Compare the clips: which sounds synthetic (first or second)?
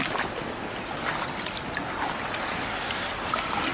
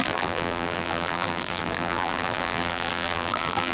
second